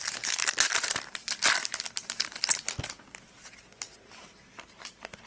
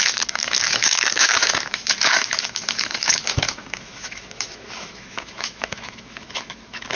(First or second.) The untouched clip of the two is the first